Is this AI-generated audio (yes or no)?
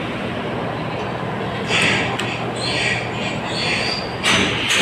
no